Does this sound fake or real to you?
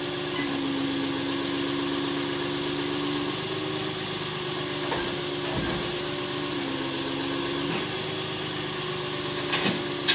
real